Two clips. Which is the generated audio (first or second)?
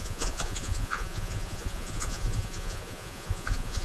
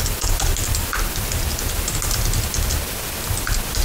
first